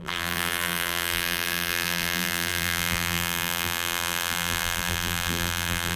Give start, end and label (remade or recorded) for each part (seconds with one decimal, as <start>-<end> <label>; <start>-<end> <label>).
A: 0.0-6.0 remade